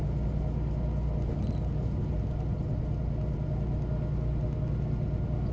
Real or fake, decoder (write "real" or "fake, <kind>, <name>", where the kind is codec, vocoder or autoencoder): real